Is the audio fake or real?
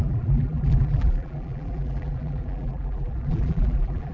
fake